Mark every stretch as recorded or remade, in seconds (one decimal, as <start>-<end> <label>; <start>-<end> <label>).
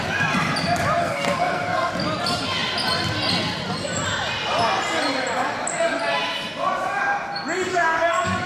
0.0-1.0 recorded; 1.0-1.9 remade; 1.9-7.7 recorded; 7.7-8.5 remade